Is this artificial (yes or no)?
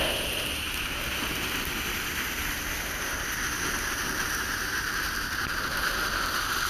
no